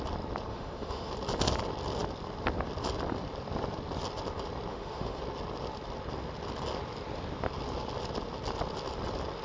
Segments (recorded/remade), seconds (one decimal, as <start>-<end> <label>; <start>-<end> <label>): 0.0-0.5 recorded; 0.5-1.1 remade; 1.1-4.7 recorded; 4.7-5.2 remade; 5.2-9.4 recorded